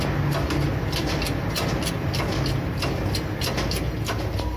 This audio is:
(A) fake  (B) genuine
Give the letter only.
B